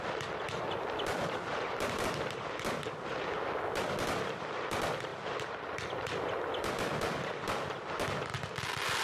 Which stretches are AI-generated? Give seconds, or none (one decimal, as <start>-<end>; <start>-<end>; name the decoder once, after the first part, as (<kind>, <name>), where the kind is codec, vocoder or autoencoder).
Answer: none